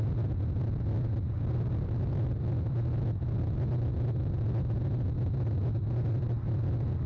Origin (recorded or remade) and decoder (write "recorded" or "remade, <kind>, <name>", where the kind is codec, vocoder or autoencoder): recorded